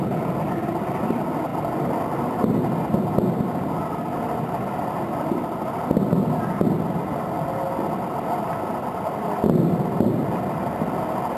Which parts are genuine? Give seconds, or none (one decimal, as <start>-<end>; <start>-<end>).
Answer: 0.0-11.4